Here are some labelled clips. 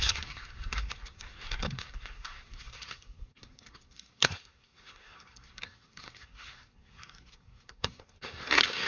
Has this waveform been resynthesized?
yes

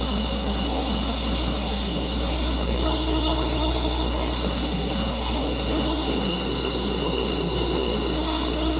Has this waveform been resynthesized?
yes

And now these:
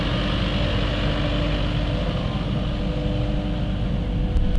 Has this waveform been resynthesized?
no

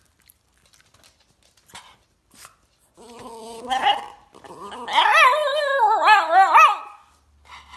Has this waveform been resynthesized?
no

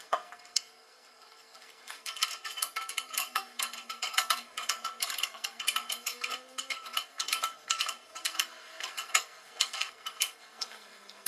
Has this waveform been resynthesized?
yes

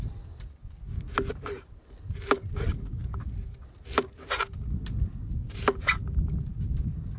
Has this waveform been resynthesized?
no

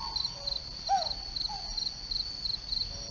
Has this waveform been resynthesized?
no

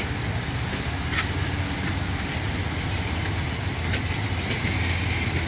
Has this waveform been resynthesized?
no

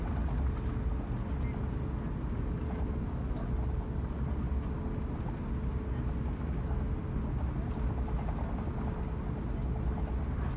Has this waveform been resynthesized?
no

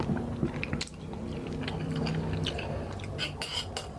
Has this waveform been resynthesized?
no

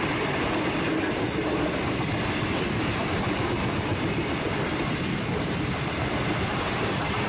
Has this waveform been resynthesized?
no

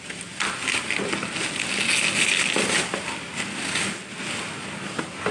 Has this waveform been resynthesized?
no